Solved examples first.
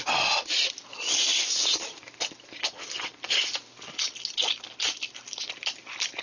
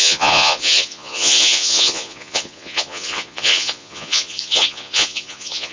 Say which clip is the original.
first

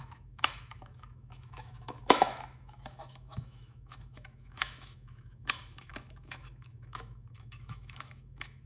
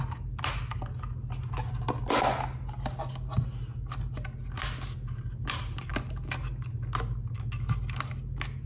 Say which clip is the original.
second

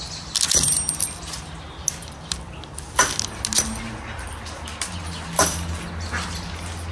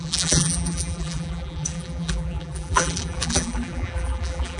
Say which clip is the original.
first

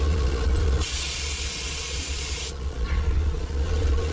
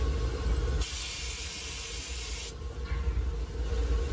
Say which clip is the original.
second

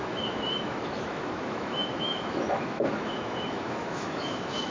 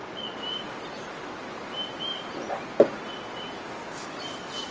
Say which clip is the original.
second